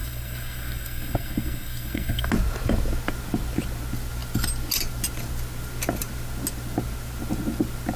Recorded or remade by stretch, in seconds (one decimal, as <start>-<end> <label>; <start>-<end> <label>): 0.0-2.3 remade; 2.3-8.0 recorded